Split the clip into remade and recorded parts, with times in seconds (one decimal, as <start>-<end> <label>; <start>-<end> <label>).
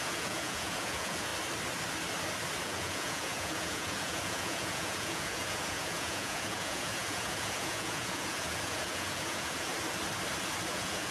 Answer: 0.0-1.3 remade; 1.3-2.6 recorded; 2.6-9.7 remade; 9.7-10.7 recorded; 10.7-11.1 remade